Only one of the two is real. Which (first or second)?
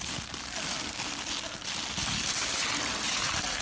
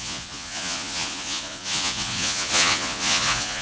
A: first